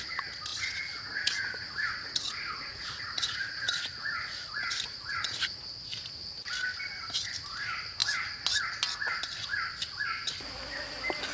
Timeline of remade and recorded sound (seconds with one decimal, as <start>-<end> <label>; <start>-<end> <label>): 0.0-0.5 recorded; 0.5-5.6 remade; 5.6-11.3 recorded